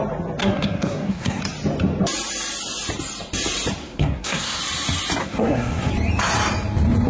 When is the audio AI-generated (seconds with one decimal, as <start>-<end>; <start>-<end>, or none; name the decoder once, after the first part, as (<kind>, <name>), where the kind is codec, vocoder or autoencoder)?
0.4-1.4 (codec, SNAC); 3.8-4.6; 5.2-5.9